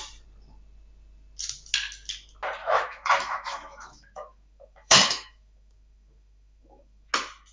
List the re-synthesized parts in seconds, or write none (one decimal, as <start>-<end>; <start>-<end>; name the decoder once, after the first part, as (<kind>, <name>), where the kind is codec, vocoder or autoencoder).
2.6-7.1 (autoencoder, DAC-VAE)